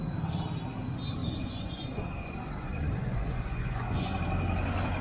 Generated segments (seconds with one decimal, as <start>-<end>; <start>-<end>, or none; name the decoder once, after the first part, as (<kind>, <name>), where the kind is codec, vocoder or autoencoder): 1.2-4.2 (vocoder, Vocos)